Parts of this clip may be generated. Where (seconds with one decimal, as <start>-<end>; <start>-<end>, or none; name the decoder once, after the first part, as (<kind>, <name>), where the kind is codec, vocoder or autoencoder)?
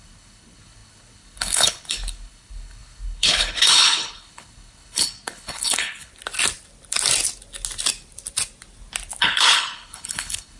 0.0-6.1 (codec, HILCodec); 9.2-10.6